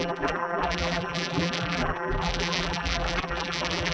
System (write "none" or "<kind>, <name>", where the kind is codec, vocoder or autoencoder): vocoder, BigVGAN v2